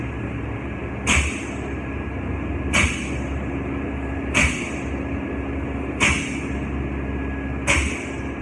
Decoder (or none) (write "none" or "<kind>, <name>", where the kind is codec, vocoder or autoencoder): none